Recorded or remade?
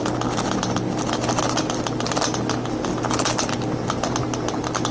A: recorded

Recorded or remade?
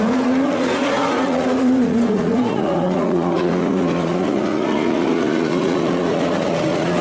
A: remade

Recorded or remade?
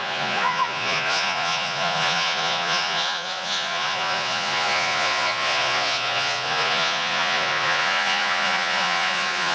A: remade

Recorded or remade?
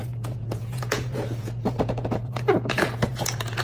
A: remade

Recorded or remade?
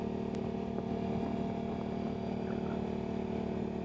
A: recorded